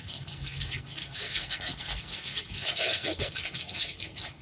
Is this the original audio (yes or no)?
no